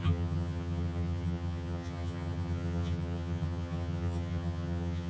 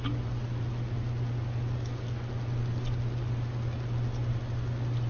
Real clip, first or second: second